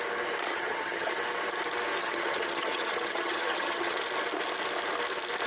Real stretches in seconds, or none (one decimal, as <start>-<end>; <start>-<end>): 0.0-0.5; 1.1-2.0; 4.0-5.5